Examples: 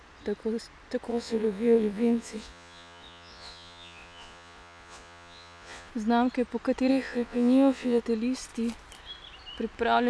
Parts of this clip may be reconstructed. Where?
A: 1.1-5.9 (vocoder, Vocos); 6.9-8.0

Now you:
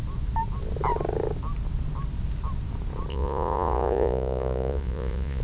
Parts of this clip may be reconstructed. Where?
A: 3.1-5.4 (vocoder, Vocos)

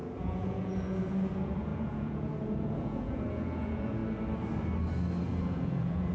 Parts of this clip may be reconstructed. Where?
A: 0.0-4.0 (vocoder, Vocos); 5.2-6.1

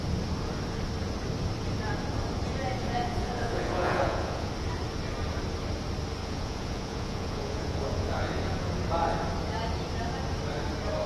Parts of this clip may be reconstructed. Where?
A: 2.8-4.5 (vocoder, Vocos); 6.2-8.7

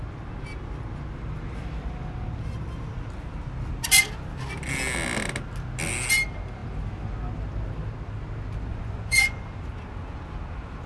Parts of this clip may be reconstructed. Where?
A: 8.7-9.4 (vocoder, Vocos)